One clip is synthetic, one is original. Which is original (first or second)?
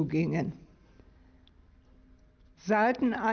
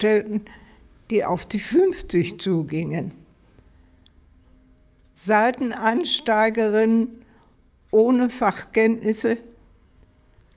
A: first